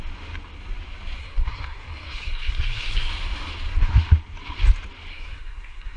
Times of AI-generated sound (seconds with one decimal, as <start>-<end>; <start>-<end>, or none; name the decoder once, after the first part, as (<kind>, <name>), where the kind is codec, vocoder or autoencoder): 1.2-3.1 (codec, SNAC); 5.1-6.0